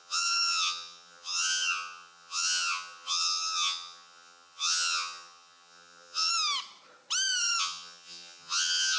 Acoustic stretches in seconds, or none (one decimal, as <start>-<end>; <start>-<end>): 6.3-7.6